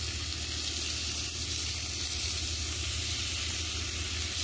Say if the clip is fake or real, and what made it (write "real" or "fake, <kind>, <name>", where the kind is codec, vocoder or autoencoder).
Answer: real